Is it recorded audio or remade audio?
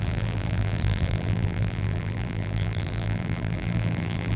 remade